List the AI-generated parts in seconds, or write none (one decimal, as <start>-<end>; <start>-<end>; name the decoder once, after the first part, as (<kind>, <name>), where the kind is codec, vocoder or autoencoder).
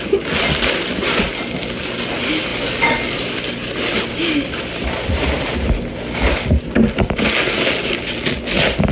2.5-5.1 (vocoder, BigVGAN v2)